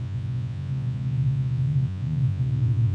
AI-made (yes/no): yes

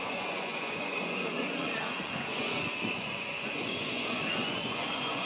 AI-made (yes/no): yes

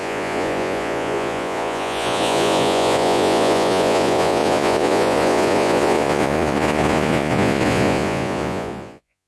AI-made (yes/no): yes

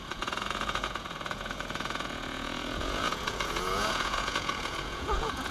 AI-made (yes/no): yes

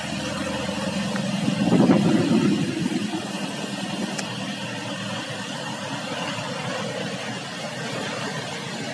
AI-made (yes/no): no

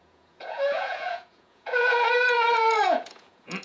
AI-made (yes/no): yes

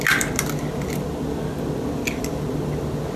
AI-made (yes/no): no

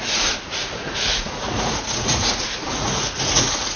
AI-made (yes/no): yes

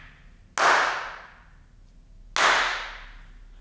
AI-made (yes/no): no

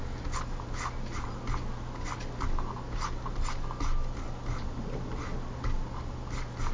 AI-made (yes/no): no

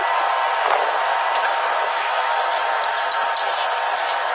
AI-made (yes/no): no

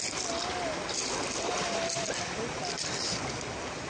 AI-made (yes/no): no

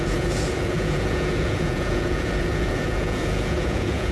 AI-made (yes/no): yes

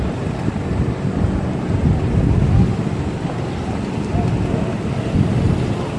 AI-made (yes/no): no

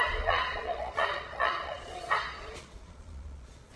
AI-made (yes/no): yes